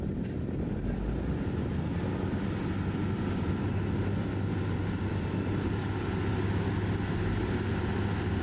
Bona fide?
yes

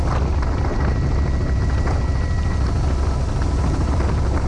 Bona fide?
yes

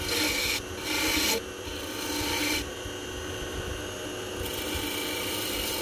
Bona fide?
yes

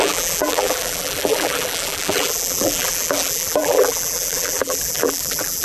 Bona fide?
no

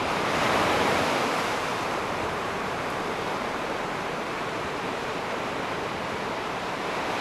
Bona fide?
no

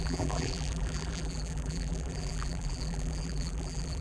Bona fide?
no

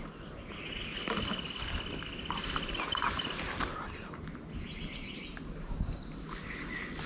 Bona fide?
yes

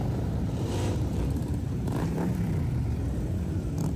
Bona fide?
no